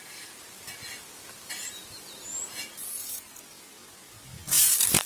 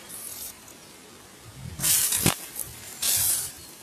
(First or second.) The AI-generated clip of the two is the second